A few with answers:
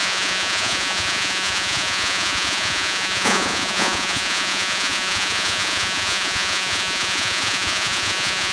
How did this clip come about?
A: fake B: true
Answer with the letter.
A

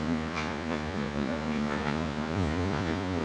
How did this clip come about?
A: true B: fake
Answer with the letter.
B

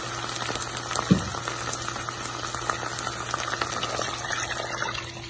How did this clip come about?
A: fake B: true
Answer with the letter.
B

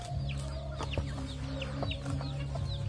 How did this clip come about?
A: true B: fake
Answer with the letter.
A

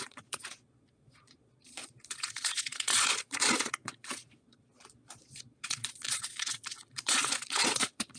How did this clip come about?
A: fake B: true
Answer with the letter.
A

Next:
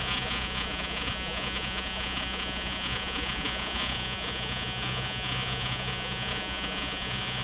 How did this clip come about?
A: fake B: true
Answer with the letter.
A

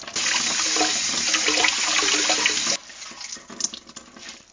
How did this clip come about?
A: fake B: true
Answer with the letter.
B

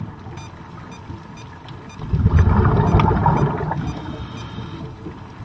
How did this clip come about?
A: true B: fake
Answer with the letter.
A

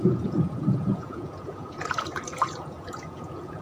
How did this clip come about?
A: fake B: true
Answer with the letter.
A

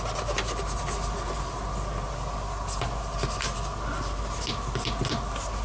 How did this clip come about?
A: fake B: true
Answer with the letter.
B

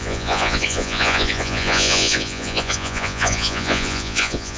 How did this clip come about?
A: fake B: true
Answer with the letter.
A